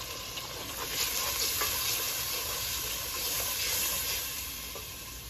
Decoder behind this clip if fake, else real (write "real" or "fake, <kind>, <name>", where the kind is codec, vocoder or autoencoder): real